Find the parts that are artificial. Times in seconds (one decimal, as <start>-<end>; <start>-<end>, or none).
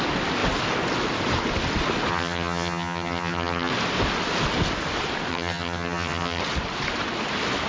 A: 2.1-3.7; 5.3-6.4